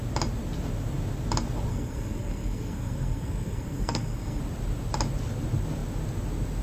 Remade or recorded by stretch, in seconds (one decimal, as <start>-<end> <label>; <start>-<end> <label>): 0.0-1.7 recorded; 1.7-4.4 remade; 4.4-6.6 recorded